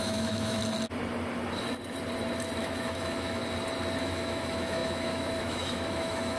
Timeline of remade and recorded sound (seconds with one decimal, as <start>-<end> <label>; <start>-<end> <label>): 0.0-0.6 remade; 0.6-2.6 recorded; 2.6-3.4 remade; 3.4-4.0 recorded; 4.0-6.4 remade